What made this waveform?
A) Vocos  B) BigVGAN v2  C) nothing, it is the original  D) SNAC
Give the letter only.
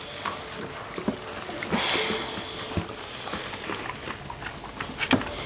C